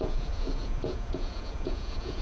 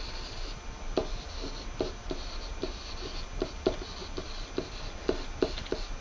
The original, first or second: second